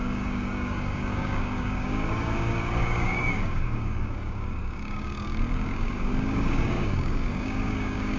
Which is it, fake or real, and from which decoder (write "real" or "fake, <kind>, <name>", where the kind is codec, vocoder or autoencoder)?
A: fake, codec, DAC